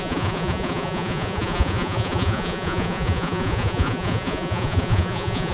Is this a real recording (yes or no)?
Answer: no